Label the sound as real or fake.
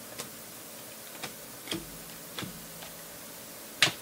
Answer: real